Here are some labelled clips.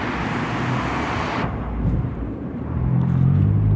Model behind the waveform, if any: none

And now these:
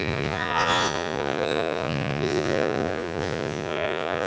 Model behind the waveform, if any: vocoder, Vocos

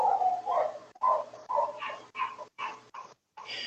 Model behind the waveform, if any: vocoder, BigVGAN v2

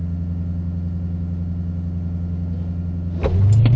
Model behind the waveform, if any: none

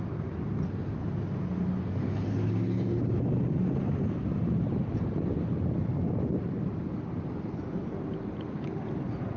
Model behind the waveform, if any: none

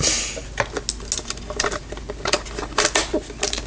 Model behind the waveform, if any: none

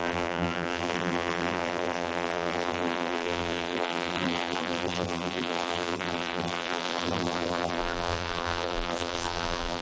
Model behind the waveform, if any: vocoder, BigVGAN v2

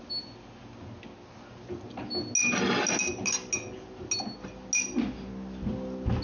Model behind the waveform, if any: none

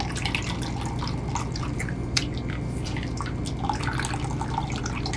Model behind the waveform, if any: none